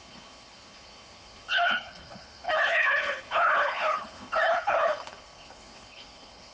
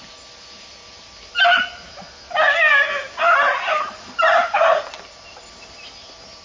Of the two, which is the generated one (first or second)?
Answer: first